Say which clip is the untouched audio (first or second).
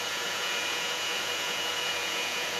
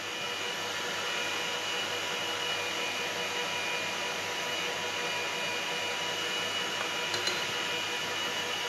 second